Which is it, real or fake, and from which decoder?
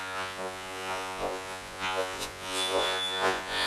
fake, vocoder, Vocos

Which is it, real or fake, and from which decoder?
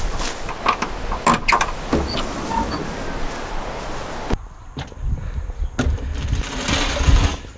real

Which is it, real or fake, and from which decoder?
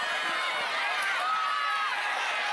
real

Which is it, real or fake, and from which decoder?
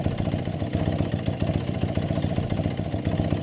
real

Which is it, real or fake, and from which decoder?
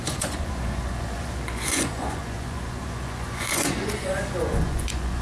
fake, vocoder, Vocos